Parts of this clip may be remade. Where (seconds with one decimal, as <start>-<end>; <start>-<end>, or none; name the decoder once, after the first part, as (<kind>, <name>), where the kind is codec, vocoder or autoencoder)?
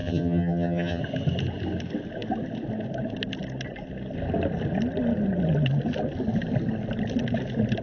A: 0.0-1.0 (vocoder, HiFi-GAN)